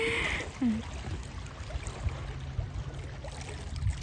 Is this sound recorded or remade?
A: recorded